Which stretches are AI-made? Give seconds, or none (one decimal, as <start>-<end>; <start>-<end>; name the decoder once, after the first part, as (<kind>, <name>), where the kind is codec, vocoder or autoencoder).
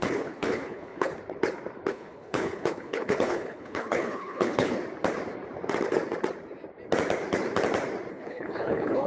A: 0.0-1.1 (codec, HILCodec); 1.9-4.8; 8.1-9.1